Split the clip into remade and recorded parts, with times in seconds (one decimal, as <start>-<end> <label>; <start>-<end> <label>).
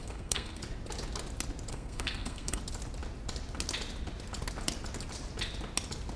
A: 0.0-0.6 remade; 0.6-1.7 recorded; 1.7-2.6 remade; 2.6-6.2 recorded